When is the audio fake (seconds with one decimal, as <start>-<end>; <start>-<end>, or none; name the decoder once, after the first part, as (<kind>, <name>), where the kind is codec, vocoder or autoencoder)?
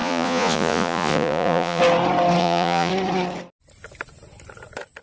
0.0-1.8 (vocoder, Vocos); 2.4-2.9